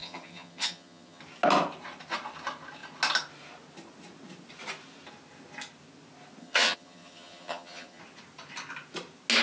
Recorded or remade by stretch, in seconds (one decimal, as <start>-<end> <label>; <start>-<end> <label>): 0.0-1.2 remade; 1.2-6.4 recorded; 6.4-8.0 remade; 8.0-9.4 recorded